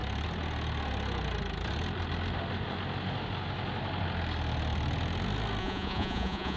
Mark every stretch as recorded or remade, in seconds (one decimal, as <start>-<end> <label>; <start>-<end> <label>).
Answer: 0.0-5.6 recorded; 5.6-6.6 remade